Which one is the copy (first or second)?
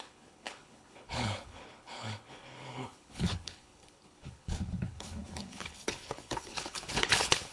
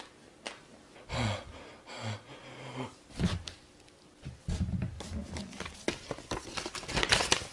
first